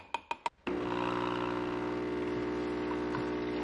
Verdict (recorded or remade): recorded